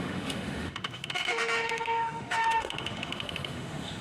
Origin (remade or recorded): remade